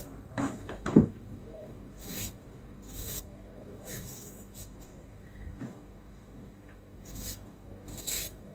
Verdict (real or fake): fake